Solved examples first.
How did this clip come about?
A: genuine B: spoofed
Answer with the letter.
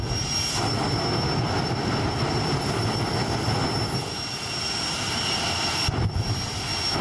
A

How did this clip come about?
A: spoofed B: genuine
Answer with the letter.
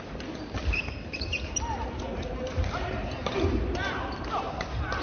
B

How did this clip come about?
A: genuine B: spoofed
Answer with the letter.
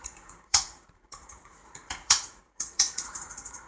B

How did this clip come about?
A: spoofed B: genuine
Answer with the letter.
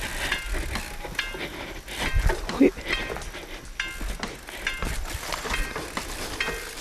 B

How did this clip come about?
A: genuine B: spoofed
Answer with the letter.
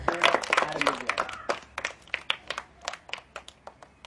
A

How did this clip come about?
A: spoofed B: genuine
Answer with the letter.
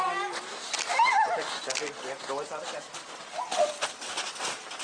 B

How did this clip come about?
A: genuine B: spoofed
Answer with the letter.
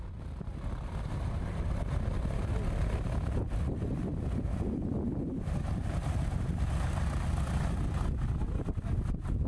A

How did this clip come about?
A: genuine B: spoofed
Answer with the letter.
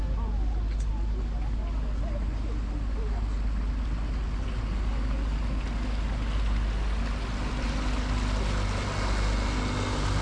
A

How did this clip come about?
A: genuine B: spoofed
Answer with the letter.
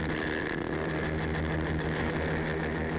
A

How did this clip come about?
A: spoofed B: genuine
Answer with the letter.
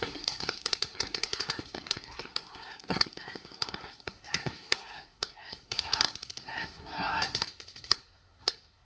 A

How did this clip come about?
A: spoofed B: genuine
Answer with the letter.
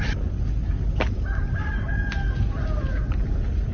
B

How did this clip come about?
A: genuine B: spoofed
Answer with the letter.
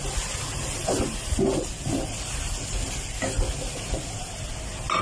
A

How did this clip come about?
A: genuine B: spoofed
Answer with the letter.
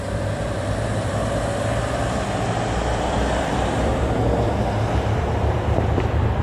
B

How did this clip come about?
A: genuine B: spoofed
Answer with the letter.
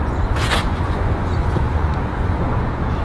B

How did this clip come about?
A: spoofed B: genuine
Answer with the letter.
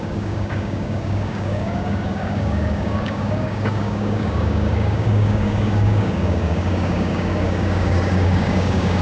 A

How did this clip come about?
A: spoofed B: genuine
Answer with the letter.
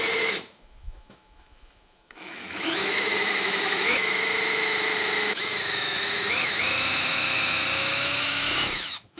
A